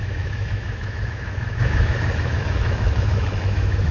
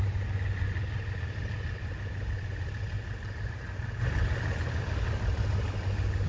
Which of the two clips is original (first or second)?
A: second